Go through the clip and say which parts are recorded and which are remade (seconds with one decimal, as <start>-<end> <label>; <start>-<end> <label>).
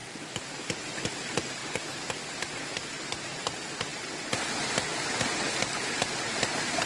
0.0-6.9 recorded